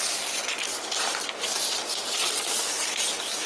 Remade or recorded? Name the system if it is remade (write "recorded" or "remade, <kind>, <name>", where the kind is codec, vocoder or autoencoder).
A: recorded